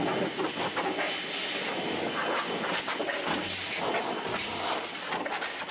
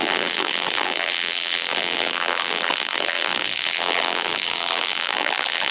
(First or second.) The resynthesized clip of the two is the second